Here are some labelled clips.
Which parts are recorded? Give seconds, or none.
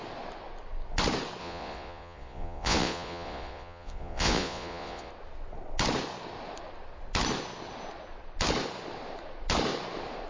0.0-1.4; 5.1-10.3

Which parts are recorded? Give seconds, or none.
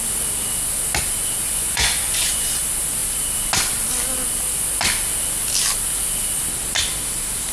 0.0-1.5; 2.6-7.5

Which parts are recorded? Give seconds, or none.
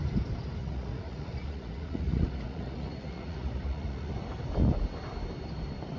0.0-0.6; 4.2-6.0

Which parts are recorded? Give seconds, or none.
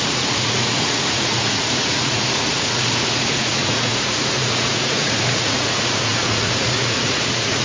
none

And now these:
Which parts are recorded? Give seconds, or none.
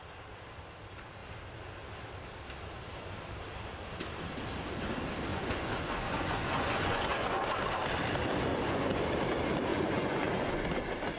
0.0-5.3; 7.4-8.5; 9.1-9.7; 10.6-11.2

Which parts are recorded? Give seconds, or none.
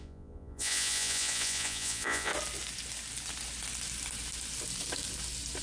2.3-5.6